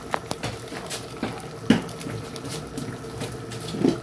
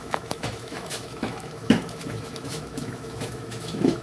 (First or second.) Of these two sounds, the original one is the first